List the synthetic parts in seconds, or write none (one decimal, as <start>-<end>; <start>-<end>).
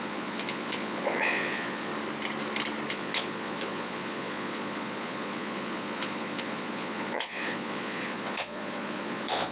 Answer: 0.0-1.9; 2.9-9.5